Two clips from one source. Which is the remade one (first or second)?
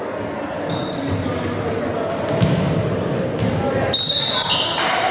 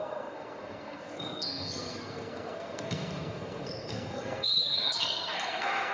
second